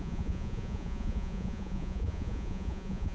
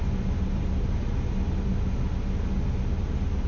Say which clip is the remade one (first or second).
first